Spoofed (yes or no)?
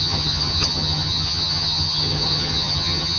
yes